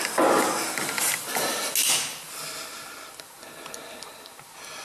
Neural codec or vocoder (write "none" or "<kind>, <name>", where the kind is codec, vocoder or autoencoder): none